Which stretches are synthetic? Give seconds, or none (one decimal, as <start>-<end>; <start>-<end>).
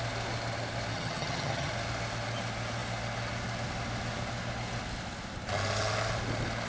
0.9-1.7